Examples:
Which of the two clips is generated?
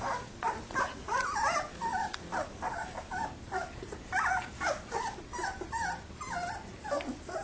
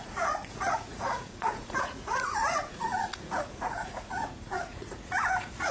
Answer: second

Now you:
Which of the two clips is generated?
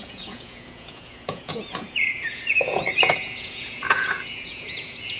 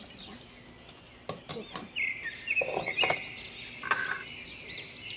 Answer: first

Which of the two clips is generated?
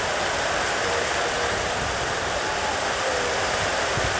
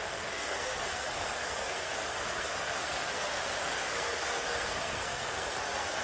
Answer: second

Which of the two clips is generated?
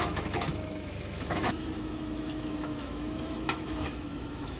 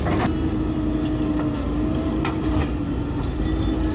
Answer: first